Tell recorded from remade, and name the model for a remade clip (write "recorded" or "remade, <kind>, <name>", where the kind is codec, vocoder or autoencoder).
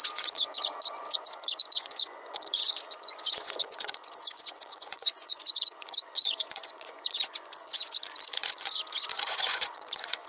remade, vocoder, Vocos